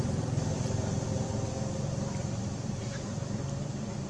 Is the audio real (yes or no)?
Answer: no